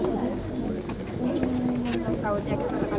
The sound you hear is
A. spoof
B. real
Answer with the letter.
B